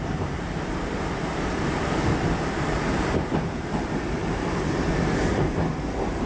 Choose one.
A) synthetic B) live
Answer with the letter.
A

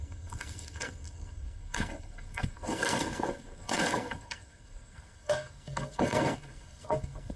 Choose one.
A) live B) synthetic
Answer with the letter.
B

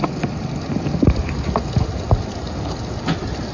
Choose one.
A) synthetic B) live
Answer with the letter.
B